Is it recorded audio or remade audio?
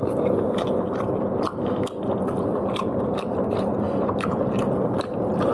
remade